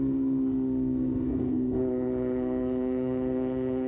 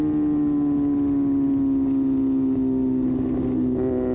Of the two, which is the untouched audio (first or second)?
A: second